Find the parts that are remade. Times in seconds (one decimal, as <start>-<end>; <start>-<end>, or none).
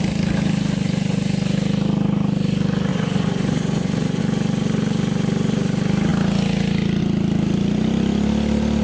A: 2.9-4.2